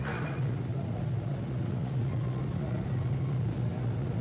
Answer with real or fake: fake